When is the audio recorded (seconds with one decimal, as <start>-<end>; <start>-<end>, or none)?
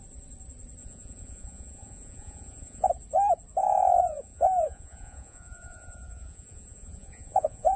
0.0-0.8; 2.9-3.6